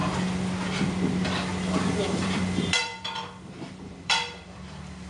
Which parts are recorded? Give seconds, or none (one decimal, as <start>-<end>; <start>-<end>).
0.0-1.9; 2.9-3.7